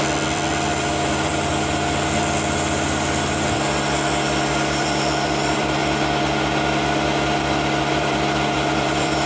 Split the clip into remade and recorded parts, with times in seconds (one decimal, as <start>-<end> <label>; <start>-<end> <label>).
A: 0.0-1.5 remade; 1.5-4.5 recorded; 4.5-5.8 remade; 5.8-7.8 recorded; 7.8-9.3 remade